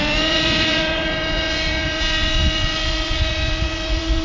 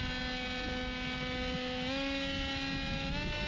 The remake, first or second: first